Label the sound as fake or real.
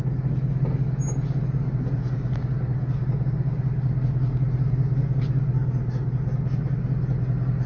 real